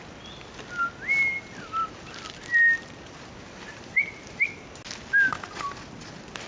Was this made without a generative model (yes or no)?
yes